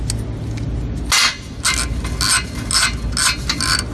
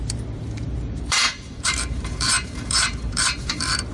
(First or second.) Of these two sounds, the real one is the first